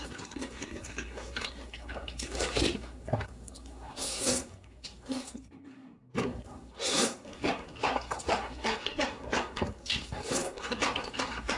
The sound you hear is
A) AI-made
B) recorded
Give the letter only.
A